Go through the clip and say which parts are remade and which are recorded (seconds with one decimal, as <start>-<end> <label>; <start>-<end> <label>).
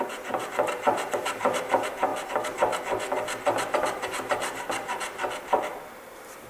0.0-2.1 remade; 2.1-6.0 recorded; 6.0-6.5 remade